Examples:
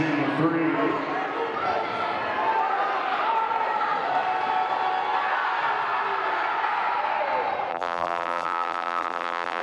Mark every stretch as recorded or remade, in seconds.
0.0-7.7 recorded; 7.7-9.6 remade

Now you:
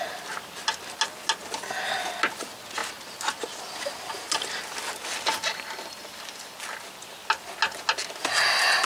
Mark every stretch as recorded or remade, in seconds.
0.0-8.8 recorded

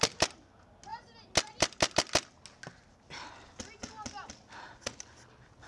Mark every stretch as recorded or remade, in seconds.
0.0-5.7 recorded

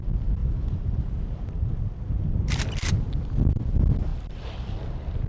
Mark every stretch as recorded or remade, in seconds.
0.0-0.4 recorded; 0.4-3.6 remade; 3.6-5.3 recorded

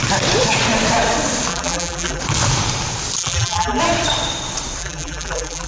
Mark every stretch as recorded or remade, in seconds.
0.0-1.5 recorded; 1.5-2.2 remade; 2.2-3.2 recorded; 3.2-3.8 remade; 3.8-4.8 recorded; 4.8-5.7 remade